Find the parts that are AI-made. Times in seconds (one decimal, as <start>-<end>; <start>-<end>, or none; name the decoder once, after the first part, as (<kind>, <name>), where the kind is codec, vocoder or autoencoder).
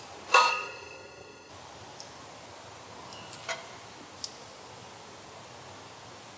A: 0.5-1.5 (codec, SNAC)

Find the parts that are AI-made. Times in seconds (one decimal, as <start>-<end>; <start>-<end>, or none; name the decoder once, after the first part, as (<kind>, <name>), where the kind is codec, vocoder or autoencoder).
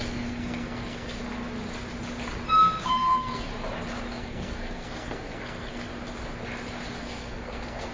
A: 0.0-1.2 (codec, SNAC); 2.8-3.5; 4.1-5.9; 7.0-7.9